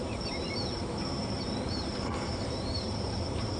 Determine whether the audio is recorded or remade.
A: remade